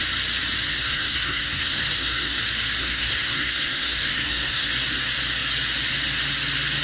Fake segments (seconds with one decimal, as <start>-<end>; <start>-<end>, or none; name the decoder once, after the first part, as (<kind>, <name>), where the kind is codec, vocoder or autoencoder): 0.7-2.4 (codec, SNAC); 2.8-4.7